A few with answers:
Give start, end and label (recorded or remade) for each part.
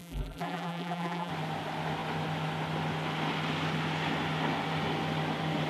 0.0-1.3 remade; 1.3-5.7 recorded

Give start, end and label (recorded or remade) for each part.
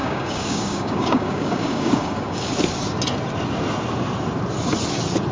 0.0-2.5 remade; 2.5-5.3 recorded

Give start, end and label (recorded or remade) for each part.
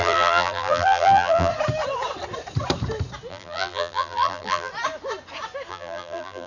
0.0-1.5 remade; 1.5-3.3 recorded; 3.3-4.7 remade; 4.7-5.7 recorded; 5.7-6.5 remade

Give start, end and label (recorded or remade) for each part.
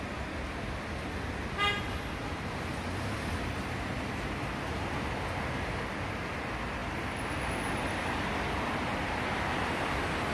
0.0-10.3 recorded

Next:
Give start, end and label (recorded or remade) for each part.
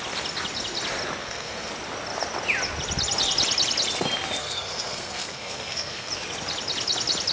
0.0-1.2 recorded; 1.2-1.7 remade; 1.7-4.4 recorded; 4.4-6.1 remade; 6.1-7.3 recorded